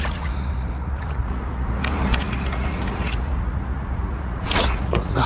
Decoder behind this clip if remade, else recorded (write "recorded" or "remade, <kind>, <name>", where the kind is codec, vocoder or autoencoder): remade, vocoder, Vocos